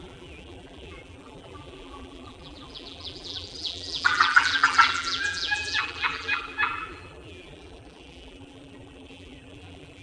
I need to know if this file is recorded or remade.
remade